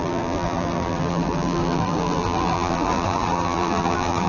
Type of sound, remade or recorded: remade